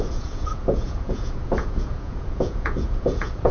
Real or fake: fake